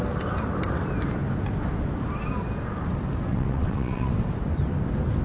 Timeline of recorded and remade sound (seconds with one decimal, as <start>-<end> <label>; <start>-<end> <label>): 0.0-3.3 recorded; 3.3-4.1 remade; 4.1-5.2 recorded